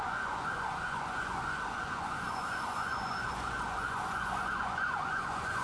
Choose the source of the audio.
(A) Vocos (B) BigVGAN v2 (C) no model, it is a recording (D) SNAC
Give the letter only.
A